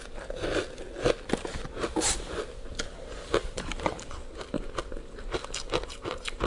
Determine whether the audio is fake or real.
real